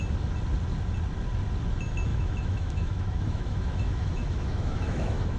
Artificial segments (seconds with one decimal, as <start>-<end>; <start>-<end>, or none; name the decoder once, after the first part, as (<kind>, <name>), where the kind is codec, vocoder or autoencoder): 2.1-5.4 (autoencoder, DAC-VAE)